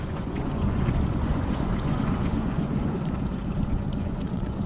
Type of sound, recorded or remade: remade